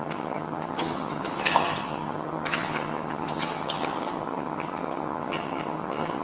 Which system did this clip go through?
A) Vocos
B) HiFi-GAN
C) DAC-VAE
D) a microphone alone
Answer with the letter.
B